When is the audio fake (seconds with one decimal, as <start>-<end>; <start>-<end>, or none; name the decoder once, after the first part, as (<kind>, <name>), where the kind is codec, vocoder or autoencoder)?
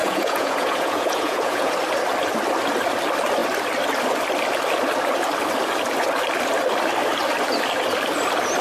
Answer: 0.0-1.7 (vocoder, Vocos)